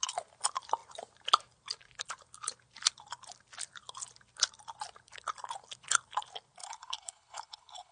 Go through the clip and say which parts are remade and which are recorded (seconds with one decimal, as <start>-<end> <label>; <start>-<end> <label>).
0.0-6.6 recorded; 6.6-7.9 remade